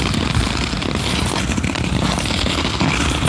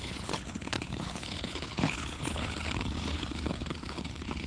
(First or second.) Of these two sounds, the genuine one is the first